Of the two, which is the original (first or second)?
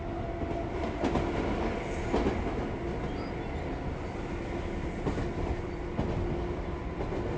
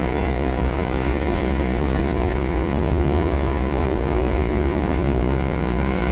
first